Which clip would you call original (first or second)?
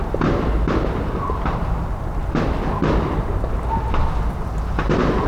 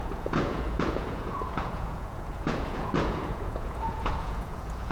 first